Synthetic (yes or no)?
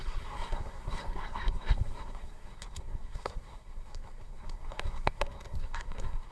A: yes